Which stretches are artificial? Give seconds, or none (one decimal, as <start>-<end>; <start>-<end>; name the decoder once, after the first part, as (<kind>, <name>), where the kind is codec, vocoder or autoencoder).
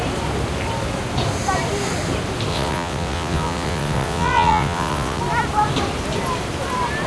2.5-5.2 (vocoder, WaveNeXt)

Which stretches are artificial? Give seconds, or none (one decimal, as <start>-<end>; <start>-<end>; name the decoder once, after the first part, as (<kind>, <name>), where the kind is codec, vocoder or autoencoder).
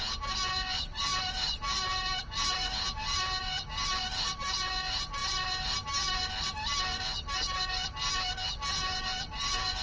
0.0-5.2 (vocoder, Vocos); 8.5-9.8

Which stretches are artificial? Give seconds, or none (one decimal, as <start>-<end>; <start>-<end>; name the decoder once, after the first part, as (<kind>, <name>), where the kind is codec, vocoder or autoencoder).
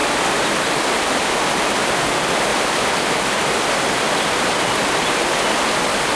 2.5-5.2 (vocoder, BigVGAN v2)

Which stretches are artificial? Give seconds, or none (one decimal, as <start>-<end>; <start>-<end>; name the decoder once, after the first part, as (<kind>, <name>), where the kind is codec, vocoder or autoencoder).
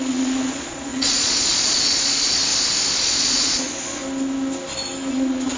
0.0-2.5 (vocoder, Vocos); 3.0-4.0; 5.1-5.6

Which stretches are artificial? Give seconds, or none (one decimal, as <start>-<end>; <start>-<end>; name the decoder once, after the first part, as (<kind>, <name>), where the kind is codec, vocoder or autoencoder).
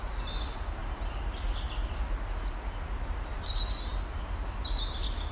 none